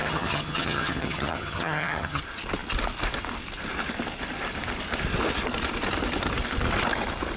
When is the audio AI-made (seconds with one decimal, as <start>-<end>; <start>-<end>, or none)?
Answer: 0.0-2.2

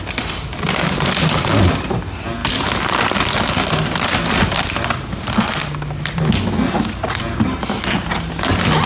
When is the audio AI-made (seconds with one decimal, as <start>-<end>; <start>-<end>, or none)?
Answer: none

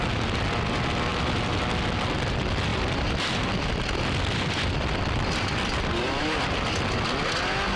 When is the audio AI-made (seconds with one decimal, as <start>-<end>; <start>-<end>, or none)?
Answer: 1.1-1.6; 2.7-6.2

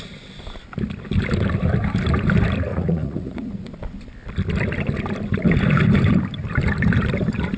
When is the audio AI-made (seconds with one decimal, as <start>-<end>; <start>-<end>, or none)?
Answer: 2.7-3.7

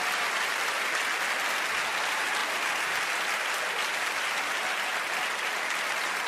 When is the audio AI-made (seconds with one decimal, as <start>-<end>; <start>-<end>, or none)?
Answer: none

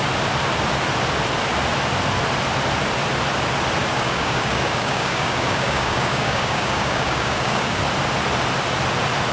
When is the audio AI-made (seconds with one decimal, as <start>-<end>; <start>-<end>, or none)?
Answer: 3.9-7.8

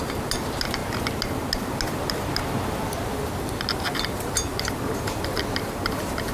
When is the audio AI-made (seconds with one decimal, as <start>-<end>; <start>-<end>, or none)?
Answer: none

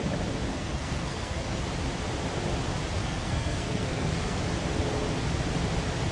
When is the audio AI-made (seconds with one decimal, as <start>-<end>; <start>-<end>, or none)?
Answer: 0.5-1.6; 3.0-4.4